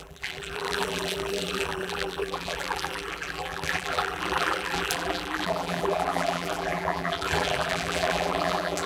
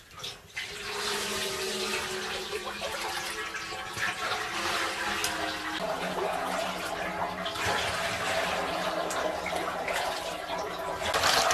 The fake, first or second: first